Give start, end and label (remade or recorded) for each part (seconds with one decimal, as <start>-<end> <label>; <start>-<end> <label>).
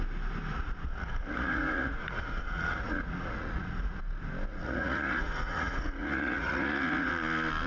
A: 0.0-0.5 recorded; 0.5-4.0 remade; 4.0-4.5 recorded; 4.5-7.1 remade; 7.1-7.7 recorded